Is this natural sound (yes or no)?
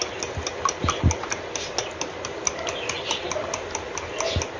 yes